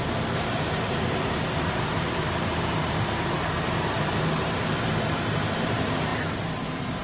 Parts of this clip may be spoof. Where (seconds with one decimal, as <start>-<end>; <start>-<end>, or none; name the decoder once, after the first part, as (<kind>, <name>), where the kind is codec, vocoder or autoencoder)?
0.0-7.0 (vocoder, BigVGAN v2)